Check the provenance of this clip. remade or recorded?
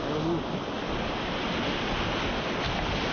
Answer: recorded